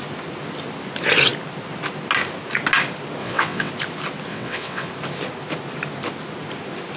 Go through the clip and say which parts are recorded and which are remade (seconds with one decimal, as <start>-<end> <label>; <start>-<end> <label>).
0.0-3.2 recorded; 3.2-3.7 remade; 3.7-4.3 recorded; 4.3-4.9 remade; 4.9-7.0 recorded